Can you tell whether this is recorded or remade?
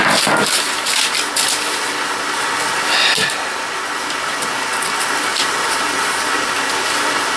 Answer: recorded